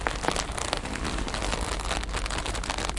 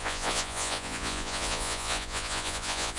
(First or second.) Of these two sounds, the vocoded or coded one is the second